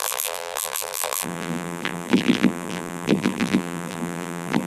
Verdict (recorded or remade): remade